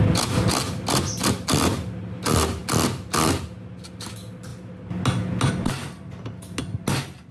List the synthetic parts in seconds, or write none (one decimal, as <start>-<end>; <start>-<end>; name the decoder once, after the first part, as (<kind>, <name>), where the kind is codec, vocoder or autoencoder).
none